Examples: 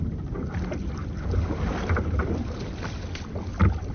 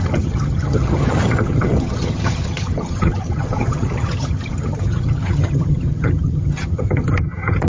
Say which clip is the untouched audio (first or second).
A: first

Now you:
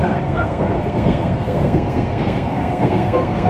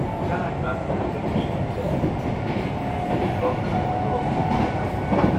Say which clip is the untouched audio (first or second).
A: second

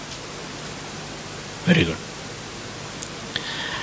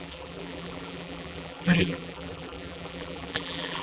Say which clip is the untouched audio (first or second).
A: first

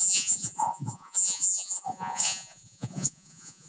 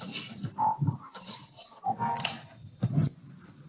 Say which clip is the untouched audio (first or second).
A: second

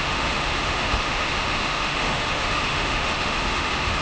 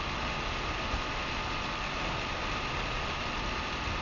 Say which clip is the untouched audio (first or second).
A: second